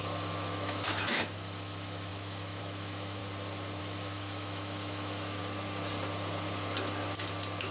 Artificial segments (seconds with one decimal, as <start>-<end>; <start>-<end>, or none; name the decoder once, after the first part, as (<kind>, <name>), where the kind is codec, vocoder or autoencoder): 0.0-3.2 (autoencoder, DAC-VAE); 3.8-5.4